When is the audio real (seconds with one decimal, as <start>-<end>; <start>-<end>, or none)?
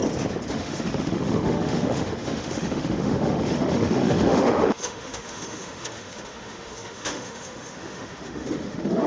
0.0-0.5